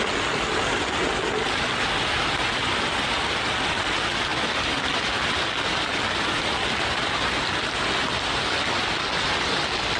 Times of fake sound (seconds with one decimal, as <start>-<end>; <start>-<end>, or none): none